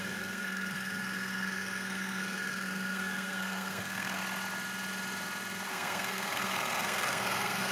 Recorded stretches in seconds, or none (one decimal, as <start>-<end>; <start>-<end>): 4.2-5.7